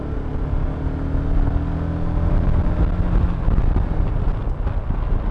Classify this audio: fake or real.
real